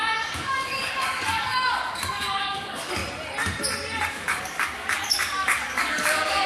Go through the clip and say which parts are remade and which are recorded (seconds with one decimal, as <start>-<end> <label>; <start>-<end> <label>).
0.0-3.0 remade; 3.0-4.1 recorded; 4.1-6.5 remade